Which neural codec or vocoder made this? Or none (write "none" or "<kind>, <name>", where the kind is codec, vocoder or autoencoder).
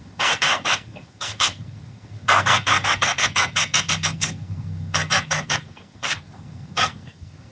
codec, SNAC